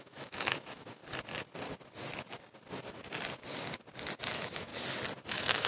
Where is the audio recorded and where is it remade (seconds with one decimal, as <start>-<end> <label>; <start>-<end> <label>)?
0.0-1.0 remade; 1.0-4.3 recorded; 4.3-4.7 remade; 4.7-5.3 recorded; 5.3-5.7 remade